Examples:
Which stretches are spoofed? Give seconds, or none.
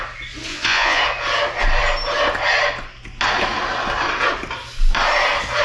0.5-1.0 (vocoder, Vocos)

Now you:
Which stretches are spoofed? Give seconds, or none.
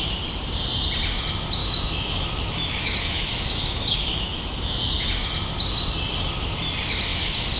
1.6-5.1 (autoencoder, DAC-VAE)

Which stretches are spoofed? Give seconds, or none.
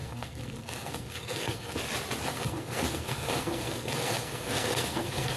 0.0-1.8 (codec, SNAC); 2.2-5.4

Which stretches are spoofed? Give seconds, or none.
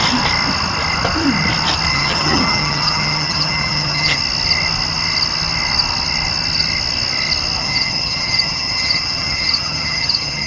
1.9-4.2 (vocoder, HiFi-GAN); 7.6-10.5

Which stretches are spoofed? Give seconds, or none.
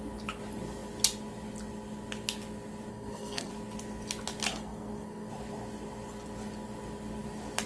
2.9-3.5 (codec, SNAC); 4.5-5.3